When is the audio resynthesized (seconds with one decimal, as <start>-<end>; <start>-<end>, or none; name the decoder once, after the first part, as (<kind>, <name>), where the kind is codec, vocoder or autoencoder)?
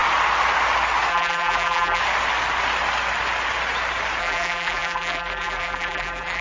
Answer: 1.1-2.0 (vocoder, BigVGAN v2); 4.2-6.4